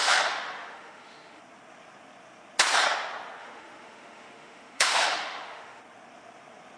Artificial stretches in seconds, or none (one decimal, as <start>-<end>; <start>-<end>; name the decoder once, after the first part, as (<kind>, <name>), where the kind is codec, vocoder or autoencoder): 0.0-1.4 (autoencoder, DAC-VAE); 3.4-5.8